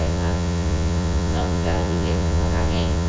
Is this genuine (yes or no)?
no